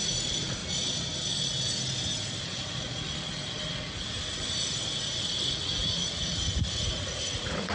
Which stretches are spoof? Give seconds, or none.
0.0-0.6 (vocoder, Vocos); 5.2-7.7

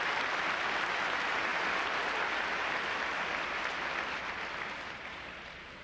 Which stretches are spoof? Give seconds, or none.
none

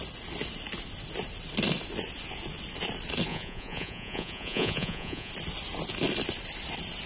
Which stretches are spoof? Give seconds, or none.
3.3-5.3 (vocoder, Vocos)

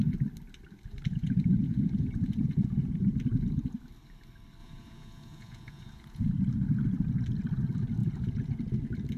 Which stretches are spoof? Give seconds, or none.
1.1-2.8 (vocoder, Vocos); 4.6-6.3; 8.0-8.6

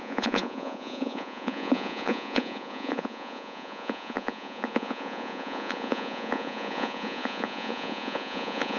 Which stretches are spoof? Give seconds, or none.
0.0-8.8 (vocoder, Vocos)

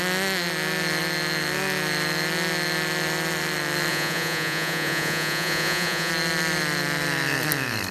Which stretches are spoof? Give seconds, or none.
3.9-6.1 (vocoder, Vocos)

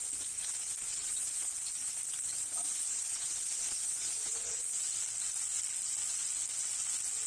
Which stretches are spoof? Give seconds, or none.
0.9-1.5 (vocoder, Vocos); 2.3-4.6